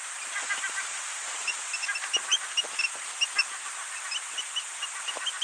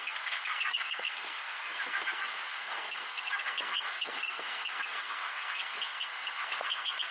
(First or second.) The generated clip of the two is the second